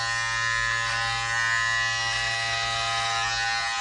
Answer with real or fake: real